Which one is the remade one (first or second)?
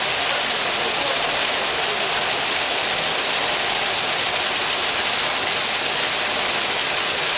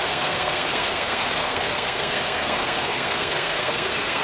second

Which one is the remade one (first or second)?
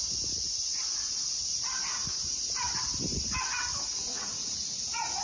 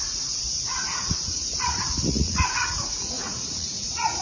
second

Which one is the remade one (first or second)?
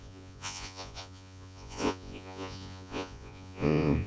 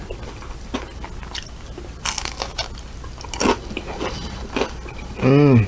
first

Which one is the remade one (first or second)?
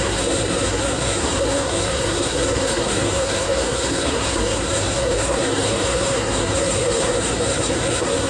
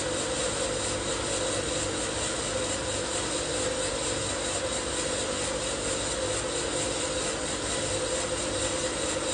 first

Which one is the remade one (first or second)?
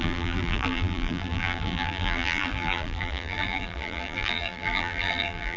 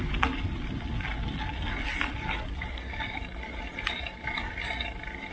first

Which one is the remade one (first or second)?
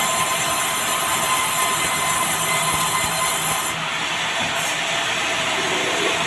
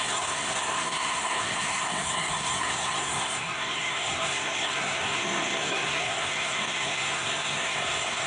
second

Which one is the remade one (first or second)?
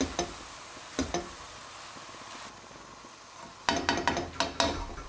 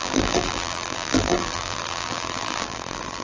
second